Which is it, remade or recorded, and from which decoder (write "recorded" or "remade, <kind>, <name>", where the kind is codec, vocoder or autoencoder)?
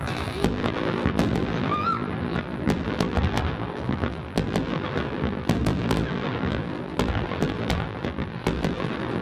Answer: remade, vocoder, BigVGAN v2